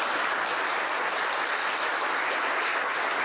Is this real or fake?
real